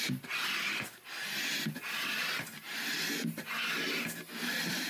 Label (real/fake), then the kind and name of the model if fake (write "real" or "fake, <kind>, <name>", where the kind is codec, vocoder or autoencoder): real